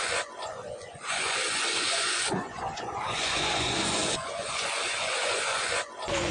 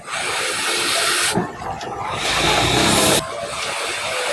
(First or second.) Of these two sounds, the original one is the second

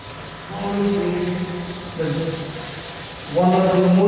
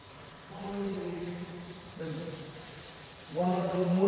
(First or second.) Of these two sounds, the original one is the first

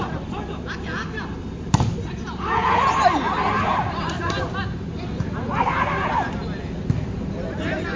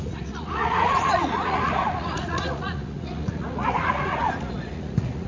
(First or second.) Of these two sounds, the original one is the first